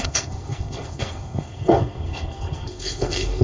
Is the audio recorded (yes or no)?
no